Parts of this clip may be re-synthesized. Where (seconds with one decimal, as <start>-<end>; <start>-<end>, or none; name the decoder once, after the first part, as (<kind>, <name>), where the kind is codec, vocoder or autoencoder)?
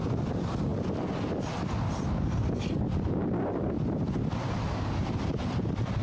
none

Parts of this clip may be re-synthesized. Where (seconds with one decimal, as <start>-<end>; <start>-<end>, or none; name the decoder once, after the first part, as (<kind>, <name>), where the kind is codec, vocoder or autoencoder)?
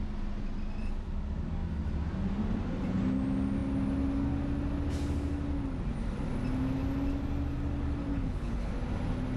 8.1-8.7 (codec, HILCodec)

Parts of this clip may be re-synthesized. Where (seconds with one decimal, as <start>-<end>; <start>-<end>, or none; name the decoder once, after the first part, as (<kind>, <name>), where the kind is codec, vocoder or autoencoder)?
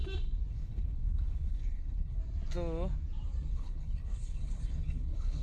0.5-2.2 (codec, HILCodec); 3.5-5.4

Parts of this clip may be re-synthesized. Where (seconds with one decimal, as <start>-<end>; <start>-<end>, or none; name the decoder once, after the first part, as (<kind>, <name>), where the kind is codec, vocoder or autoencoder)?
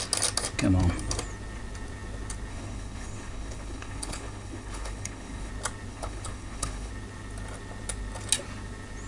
2.5-5.5 (codec, HILCodec); 5.9-6.9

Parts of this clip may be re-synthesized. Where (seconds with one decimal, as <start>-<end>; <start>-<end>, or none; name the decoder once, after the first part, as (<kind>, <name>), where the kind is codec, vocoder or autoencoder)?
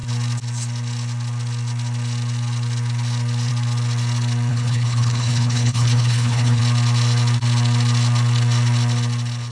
4.5-6.6 (codec, HILCodec)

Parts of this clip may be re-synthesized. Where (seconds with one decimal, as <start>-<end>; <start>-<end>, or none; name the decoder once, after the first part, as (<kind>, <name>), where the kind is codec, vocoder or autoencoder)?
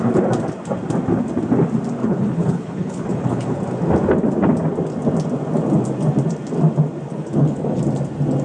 2.0-3.6 (codec, HILCodec); 7.1-7.8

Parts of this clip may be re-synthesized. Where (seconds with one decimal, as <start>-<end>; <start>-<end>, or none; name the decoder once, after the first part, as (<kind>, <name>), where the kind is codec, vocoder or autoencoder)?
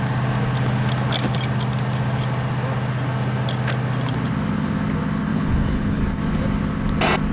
5.3-6.0 (codec, HILCodec)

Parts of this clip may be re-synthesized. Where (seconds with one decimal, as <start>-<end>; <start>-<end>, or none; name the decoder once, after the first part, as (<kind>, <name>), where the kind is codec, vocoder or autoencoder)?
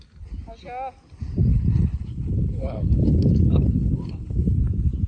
1.5-4.6 (codec, HILCodec)